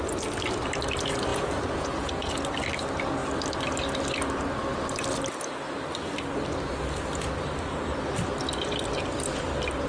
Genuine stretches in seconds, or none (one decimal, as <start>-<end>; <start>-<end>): 0.0-1.3; 2.4-9.9